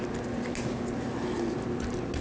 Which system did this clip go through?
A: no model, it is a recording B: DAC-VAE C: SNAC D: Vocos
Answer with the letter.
A